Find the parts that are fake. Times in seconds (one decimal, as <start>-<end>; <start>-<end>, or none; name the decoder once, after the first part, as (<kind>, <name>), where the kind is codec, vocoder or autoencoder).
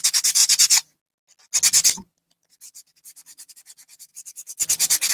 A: none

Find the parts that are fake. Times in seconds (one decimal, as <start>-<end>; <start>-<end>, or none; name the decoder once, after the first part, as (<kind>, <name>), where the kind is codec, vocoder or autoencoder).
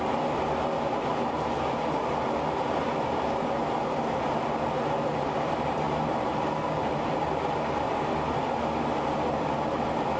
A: none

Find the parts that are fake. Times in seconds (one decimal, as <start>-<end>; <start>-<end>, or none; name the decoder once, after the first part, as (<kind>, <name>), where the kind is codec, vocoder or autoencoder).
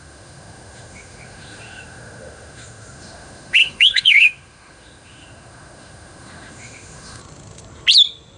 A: 0.0-7.2 (autoencoder, DAC-VAE)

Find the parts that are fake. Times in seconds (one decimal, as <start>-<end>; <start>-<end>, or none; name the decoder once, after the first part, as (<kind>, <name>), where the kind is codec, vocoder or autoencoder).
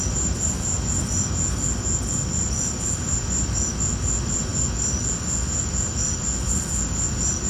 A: none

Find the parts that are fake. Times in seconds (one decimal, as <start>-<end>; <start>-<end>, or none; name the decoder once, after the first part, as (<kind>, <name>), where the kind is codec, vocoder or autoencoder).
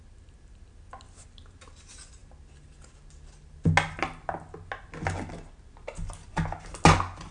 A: none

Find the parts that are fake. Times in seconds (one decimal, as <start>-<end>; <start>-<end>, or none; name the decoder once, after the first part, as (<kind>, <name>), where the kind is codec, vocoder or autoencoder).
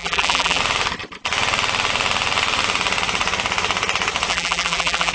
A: 0.0-0.6 (vocoder, BigVGAN v2); 4.3-5.1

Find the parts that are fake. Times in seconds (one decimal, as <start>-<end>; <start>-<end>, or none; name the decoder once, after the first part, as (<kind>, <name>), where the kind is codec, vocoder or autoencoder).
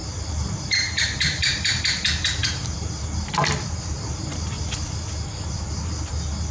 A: 0.0-1.8 (vocoder, BigVGAN v2); 2.4-4.7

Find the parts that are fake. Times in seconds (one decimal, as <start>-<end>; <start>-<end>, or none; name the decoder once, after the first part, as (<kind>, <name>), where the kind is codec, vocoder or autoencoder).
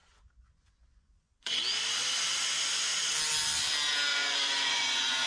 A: 0.0-1.6 (vocoder, Vocos); 4.1-5.3